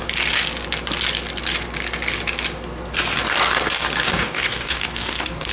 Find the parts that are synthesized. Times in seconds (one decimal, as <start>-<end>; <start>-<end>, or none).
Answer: 4.0-5.5